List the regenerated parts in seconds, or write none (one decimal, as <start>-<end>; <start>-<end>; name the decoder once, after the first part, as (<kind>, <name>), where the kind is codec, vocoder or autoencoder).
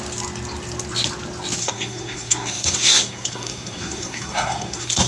1.6-5.1 (codec, SNAC)